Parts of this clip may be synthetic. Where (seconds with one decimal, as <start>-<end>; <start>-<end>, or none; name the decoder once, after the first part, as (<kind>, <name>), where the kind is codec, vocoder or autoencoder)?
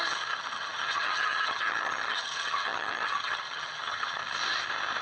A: 0.0-4.2 (vocoder, HiFi-GAN)